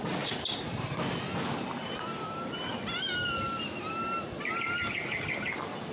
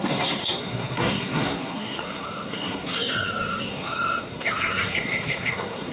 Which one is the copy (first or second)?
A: second